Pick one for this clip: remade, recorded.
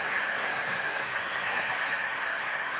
remade